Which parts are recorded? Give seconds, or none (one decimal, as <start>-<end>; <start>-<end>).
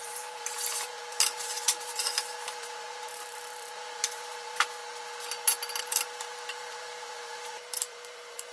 4.8-5.8